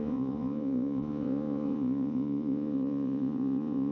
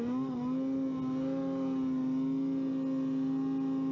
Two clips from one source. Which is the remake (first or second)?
first